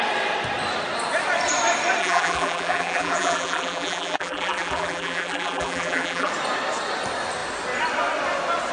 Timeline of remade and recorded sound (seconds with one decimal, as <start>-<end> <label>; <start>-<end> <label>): 0.0-2.0 recorded; 2.0-6.3 remade; 6.3-8.7 recorded